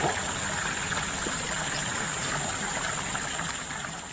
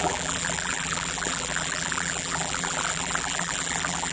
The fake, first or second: second